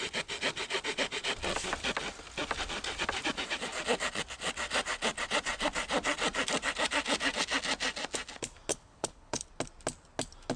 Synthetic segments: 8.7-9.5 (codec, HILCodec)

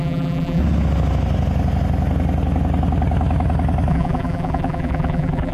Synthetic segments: 0.0-0.6 (vocoder, BigVGAN v2); 3.9-5.5

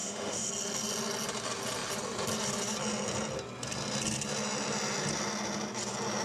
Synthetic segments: 0.0-0.5 (autoencoder, DAC-VAE)

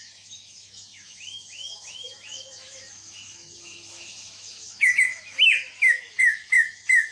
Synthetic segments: 0.0-7.1 (autoencoder, DAC-VAE)

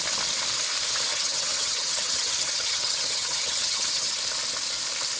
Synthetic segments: 1.1-4.2 (vocoder, HiFi-GAN)

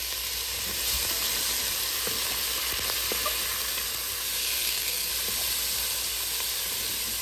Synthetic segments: 4.4-5.1 (codec, SNAC)

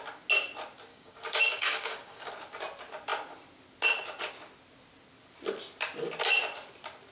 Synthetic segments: 0.9-2.3 (codec, DAC)

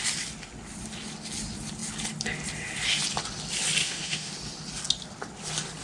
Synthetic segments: 3.8-4.3 (autoencoder, DAC-VAE)